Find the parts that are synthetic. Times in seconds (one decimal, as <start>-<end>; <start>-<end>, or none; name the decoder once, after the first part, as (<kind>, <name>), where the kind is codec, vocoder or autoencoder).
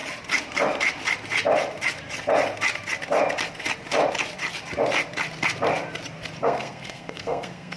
6.4-7.8 (codec, SNAC)